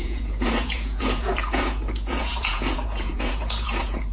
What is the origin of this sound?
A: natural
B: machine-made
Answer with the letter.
B